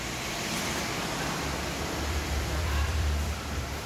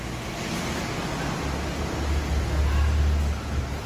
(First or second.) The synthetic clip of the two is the first